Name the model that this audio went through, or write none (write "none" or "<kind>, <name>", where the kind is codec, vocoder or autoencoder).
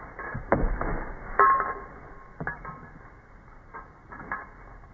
none